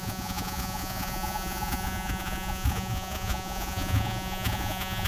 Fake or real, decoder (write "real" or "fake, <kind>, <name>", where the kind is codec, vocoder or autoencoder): fake, vocoder, Vocos